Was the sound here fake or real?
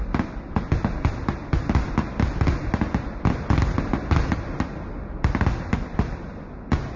real